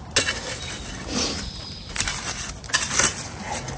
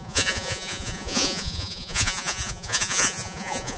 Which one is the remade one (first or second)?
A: second